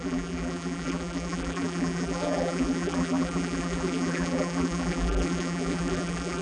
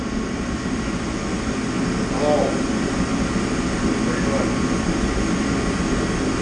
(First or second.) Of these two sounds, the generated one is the first